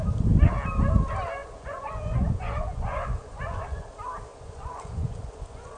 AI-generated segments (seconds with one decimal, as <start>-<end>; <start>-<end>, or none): 1.4-3.9; 4.3-5.8